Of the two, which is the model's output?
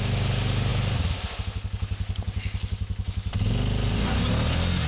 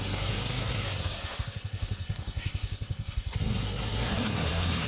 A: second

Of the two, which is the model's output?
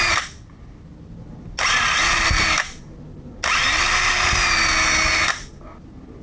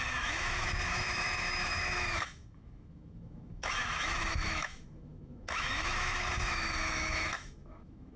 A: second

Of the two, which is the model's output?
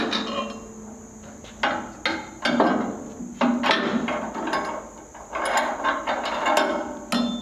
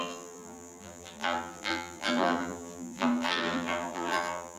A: second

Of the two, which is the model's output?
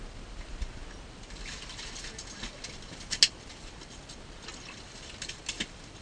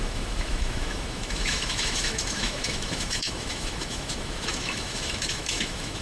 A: second